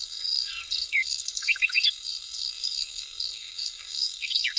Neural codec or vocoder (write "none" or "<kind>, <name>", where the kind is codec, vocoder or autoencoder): codec, SNAC